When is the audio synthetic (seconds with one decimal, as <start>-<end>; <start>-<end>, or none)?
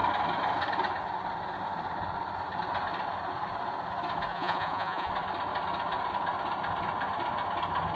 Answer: 4.3-5.1